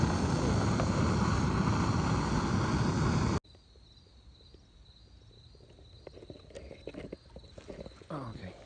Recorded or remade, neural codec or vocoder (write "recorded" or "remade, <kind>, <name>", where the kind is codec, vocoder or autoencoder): recorded